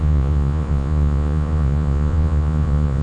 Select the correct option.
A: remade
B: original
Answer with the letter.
A